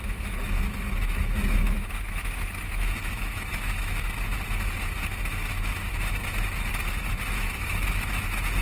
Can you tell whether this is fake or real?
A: fake